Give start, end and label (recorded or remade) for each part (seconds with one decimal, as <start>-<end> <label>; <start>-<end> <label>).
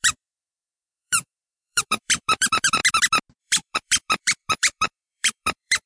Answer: 0.0-2.8 remade; 2.8-3.4 recorded; 3.4-5.9 remade